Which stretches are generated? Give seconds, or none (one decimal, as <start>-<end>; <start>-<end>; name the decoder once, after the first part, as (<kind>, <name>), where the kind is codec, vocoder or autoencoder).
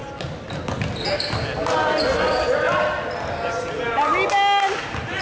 none